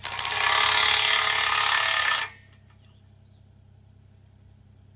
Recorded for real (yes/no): yes